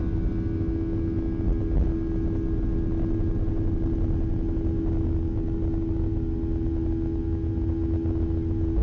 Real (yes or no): yes